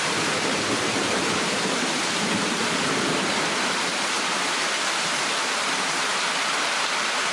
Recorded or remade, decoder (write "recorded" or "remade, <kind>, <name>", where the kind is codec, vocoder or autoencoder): remade, vocoder, BigVGAN v2